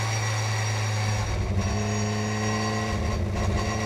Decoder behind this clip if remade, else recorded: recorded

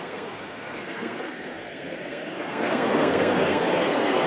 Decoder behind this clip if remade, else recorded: remade, codec, SNAC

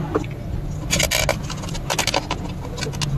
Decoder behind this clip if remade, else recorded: recorded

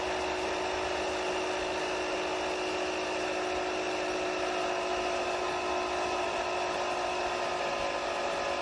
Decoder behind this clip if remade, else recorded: recorded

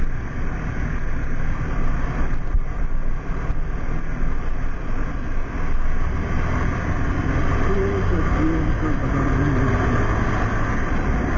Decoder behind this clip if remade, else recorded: recorded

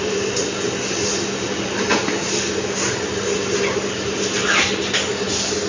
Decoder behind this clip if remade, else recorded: recorded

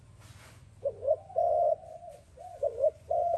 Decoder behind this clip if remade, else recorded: remade, vocoder, Vocos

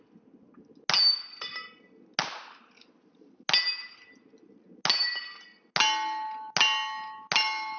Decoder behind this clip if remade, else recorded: recorded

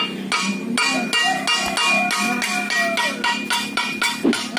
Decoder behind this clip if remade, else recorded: recorded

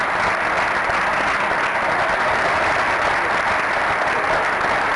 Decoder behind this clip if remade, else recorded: recorded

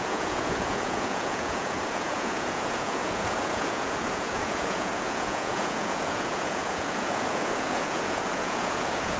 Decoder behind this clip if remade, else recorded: remade, vocoder, Vocos